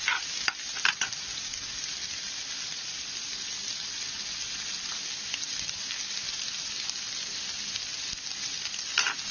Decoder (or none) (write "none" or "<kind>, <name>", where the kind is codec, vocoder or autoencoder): none